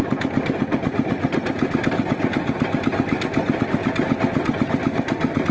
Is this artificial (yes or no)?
no